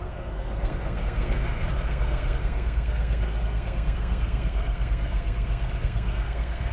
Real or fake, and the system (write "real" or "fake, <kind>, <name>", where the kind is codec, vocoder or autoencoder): fake, codec, SNAC